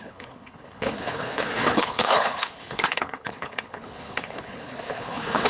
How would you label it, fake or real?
fake